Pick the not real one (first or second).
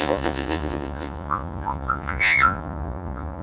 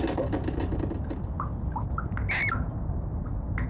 first